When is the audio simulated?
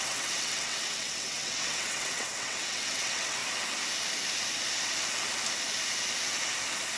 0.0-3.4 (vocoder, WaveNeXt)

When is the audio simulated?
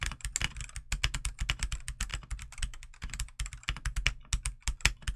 none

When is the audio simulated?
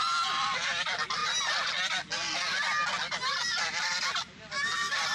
0.0-1.2 (vocoder, BigVGAN v2); 3.6-5.1